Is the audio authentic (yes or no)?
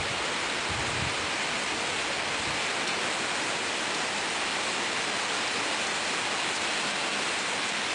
yes